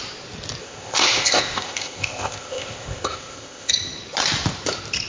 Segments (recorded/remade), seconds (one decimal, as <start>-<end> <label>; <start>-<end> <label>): 0.0-0.6 recorded; 0.6-3.7 remade; 3.7-5.1 recorded